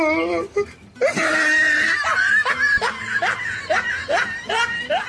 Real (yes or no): yes